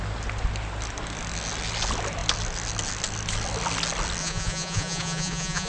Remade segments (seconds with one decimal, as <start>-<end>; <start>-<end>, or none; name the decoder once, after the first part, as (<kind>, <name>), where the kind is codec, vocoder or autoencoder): 4.2-5.7 (vocoder, Vocos)